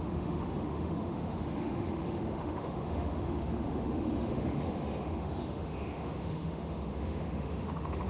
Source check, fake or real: fake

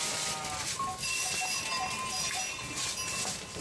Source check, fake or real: real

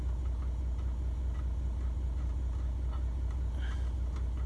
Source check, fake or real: real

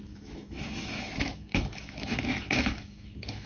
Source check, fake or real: fake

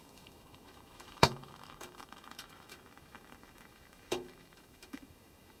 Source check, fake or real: fake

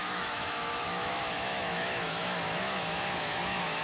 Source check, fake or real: fake